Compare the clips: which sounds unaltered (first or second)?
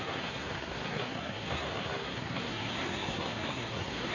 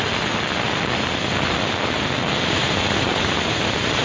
second